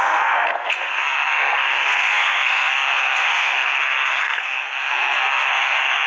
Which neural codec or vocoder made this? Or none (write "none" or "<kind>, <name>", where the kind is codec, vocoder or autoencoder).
codec, SNAC